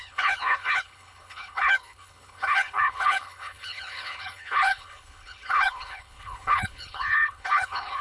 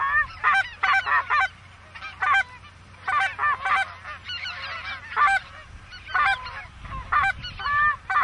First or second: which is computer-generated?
first